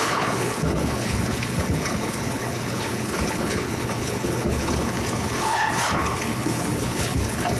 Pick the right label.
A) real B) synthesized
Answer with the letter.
B